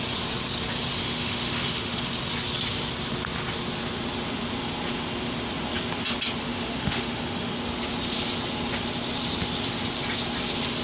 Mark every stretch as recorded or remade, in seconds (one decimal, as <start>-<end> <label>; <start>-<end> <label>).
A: 0.0-1.0 recorded; 1.0-2.0 remade; 2.0-6.4 recorded; 6.4-7.5 remade; 7.5-10.8 recorded